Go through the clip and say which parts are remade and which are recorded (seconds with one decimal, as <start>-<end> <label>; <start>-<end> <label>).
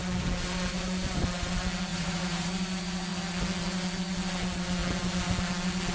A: 0.0-1.9 recorded; 1.9-2.5 remade; 2.5-5.9 recorded